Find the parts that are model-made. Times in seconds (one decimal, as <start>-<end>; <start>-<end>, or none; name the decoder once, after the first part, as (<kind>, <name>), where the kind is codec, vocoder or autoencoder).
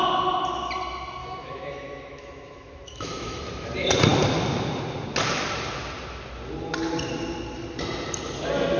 1.2-3.4 (autoencoder, DAC-VAE)